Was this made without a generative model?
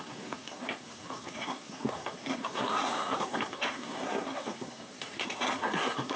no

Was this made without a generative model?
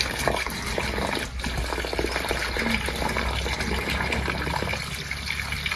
yes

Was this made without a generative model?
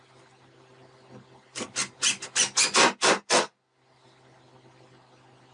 yes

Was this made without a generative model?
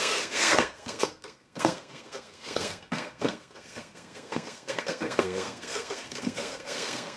no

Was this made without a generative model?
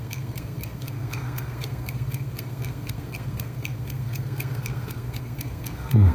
no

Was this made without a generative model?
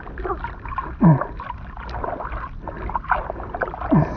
yes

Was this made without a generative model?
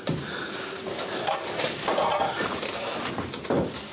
yes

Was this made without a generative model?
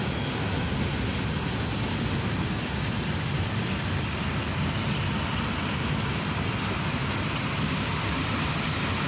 yes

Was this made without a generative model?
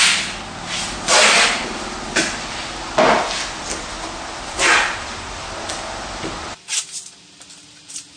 yes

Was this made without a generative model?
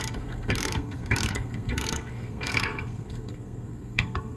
no